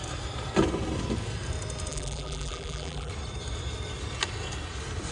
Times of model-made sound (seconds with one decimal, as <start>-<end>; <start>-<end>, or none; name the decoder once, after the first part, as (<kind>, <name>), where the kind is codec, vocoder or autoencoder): 1.9-3.1 (vocoder, BigVGAN v2)